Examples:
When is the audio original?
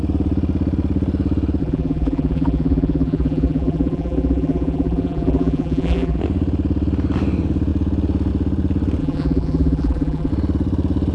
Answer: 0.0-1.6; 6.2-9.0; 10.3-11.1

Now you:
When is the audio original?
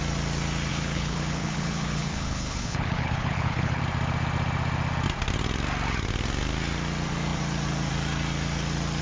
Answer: 0.0-0.7; 3.8-9.0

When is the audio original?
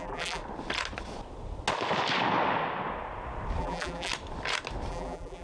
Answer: 0.4-3.6; 4.1-4.9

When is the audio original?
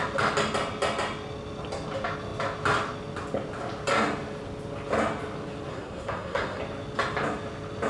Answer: 0.0-5.7; 6.6-7.9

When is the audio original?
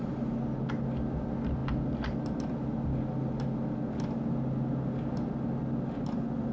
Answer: 0.0-6.5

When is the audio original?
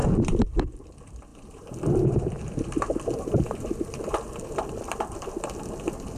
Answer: 0.0-0.6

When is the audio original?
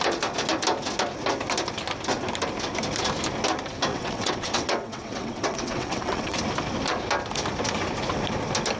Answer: 0.0-3.9; 6.4-8.8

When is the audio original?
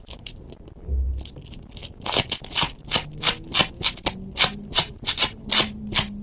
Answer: 0.0-6.2